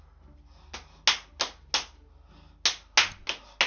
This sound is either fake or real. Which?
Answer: real